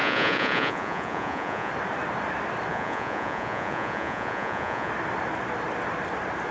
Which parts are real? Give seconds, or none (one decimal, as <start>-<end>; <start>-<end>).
1.7-2.7; 4.9-6.5